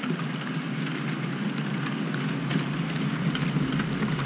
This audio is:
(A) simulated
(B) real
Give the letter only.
B